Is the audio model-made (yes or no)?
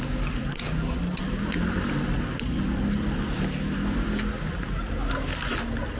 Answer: no